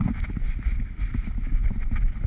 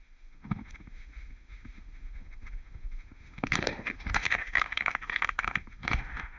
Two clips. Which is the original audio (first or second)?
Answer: first